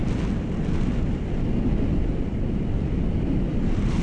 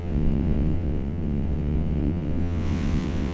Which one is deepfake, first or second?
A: second